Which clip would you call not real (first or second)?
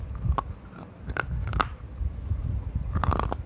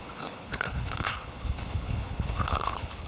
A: second